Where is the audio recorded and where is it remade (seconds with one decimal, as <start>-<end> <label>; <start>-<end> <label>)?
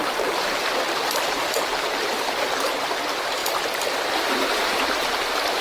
0.0-2.2 remade; 2.2-5.6 recorded